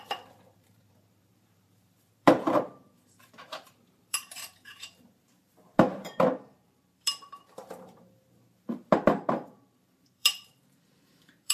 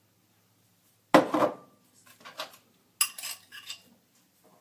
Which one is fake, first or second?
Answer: first